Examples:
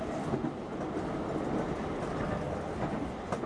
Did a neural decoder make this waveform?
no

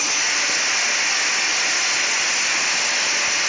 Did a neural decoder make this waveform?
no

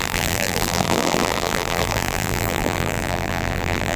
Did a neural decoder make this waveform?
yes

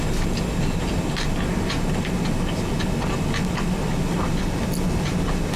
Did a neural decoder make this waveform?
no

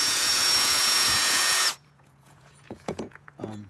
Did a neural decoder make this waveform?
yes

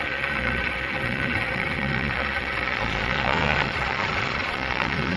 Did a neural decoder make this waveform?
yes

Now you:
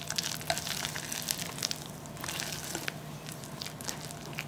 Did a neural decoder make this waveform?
yes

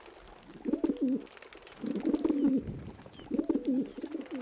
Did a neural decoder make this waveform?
no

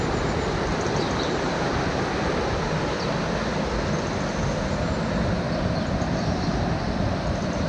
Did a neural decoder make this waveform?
no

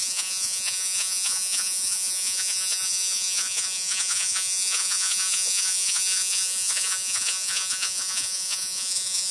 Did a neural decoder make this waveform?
yes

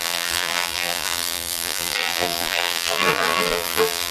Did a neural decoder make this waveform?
yes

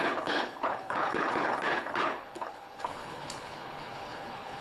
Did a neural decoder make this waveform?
yes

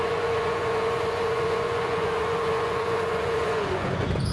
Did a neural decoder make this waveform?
yes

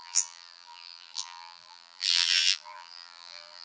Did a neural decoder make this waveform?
yes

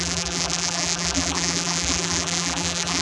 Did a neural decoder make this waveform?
yes